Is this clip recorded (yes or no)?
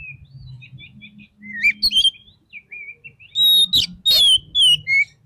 yes